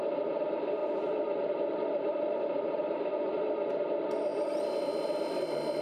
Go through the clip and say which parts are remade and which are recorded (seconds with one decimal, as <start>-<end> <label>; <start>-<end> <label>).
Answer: 0.0-0.8 recorded; 0.8-3.1 remade; 3.1-4.3 recorded; 4.3-4.9 remade; 4.9-5.8 recorded